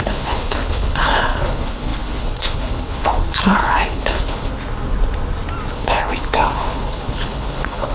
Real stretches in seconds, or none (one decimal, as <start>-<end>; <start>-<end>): 4.5-5.7